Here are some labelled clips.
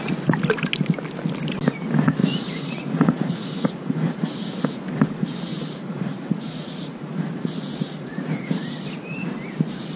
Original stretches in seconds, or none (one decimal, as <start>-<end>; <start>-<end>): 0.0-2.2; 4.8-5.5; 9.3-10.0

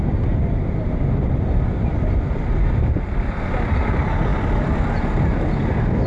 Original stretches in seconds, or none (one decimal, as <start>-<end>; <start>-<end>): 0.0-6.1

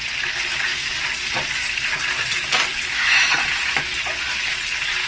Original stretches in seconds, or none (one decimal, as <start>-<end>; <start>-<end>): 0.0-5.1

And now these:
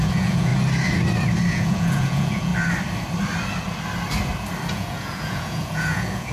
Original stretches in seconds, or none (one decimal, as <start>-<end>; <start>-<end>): 0.5-1.5; 2.5-4.7